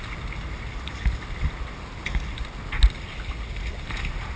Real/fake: real